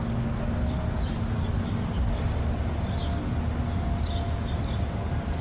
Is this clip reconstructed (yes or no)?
no